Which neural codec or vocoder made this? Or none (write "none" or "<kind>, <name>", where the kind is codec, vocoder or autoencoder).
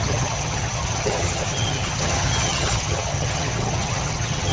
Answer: vocoder, HiFi-GAN